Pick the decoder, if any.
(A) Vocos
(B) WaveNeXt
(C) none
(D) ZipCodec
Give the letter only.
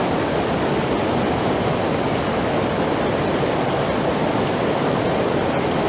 C